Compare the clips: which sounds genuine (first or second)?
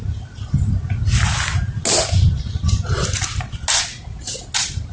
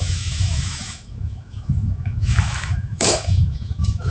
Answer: first